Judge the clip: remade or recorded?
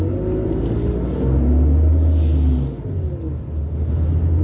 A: recorded